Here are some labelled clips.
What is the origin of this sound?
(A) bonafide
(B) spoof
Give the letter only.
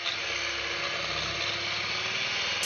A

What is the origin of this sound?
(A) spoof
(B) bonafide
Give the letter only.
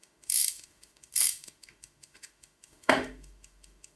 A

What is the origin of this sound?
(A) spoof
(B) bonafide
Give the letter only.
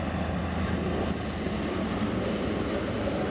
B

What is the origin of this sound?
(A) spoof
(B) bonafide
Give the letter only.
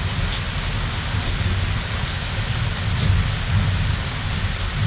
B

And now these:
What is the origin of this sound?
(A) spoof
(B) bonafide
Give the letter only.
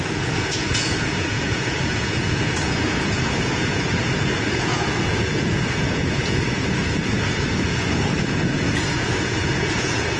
A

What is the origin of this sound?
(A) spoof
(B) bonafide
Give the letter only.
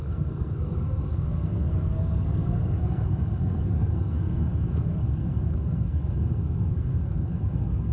A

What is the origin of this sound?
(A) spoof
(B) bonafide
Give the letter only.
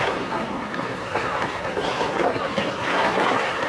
A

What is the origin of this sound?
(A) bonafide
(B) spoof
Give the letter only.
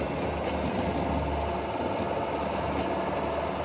A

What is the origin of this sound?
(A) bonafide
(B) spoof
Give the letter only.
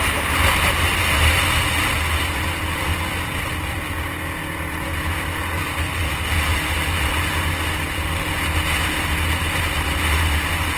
A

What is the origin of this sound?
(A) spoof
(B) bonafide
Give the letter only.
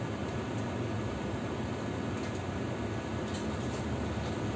B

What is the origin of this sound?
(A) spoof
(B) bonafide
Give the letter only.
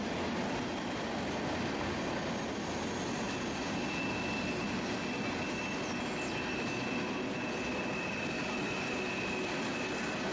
B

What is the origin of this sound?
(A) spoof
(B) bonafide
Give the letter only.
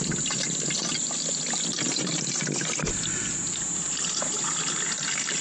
B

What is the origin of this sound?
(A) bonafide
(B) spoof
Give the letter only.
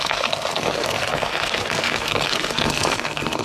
B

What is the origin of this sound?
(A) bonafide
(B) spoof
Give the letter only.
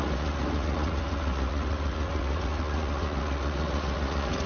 B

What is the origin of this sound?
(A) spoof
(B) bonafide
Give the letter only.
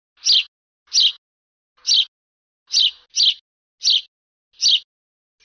B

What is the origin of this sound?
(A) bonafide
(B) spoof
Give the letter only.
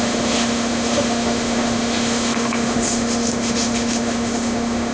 B